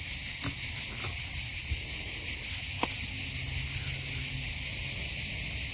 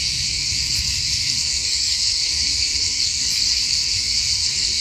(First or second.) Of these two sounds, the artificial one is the second